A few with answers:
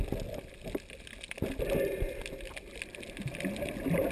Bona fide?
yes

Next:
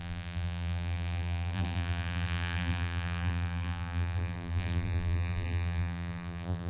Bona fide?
no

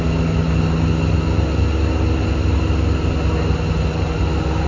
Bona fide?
yes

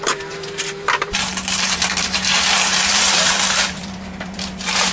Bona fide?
no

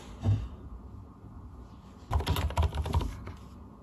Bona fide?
yes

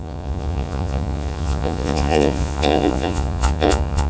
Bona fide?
no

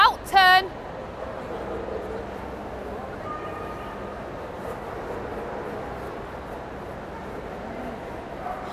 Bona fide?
yes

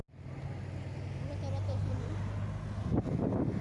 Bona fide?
yes